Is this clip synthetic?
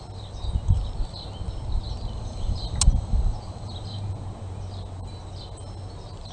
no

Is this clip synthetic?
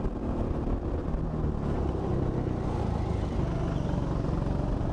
no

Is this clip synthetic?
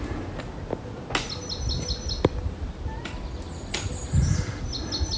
no